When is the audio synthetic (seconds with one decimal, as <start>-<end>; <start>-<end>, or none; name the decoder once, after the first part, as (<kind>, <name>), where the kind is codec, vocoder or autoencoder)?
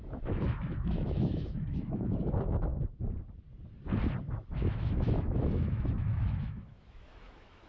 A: 0.0-2.7 (autoencoder, DAC-VAE); 4.2-7.7